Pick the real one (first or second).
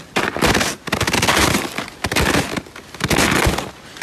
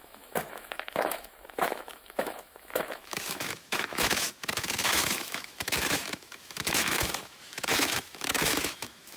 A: first